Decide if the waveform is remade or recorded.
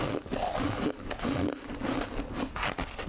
recorded